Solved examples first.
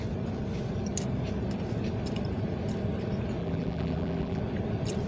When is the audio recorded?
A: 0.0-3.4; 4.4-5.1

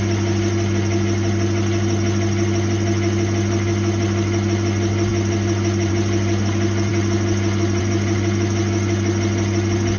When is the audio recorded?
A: 0.0-10.0

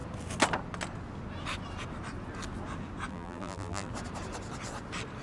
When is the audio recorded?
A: 0.0-3.1; 3.9-5.2

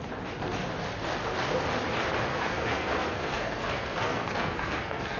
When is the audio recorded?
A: 0.0-2.3

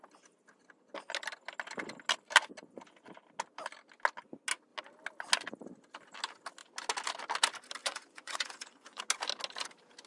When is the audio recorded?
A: 0.0-7.8; 9.0-10.1

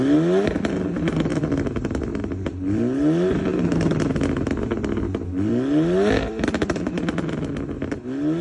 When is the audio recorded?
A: 0.0-8.4

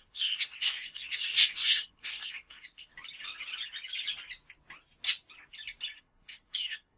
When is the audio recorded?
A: 2.9-6.0

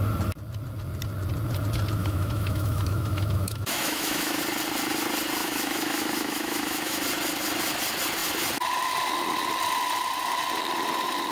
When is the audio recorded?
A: 0.0-2.0; 4.4-5.4; 7.0-11.3